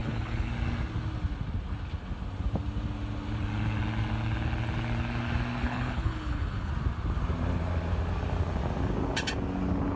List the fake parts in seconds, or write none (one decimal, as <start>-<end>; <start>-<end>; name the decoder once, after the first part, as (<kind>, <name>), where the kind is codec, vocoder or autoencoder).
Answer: 0.0-0.5 (codec, HILCodec); 5.6-6.7